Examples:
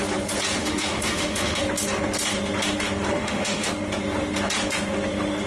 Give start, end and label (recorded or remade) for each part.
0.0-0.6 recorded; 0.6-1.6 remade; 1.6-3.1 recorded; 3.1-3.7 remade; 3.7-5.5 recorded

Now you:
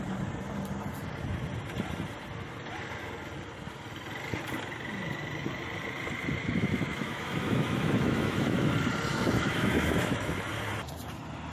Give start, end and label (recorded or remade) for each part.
0.0-6.4 recorded; 6.4-8.7 remade; 8.7-9.1 recorded; 9.1-10.5 remade; 10.5-11.5 recorded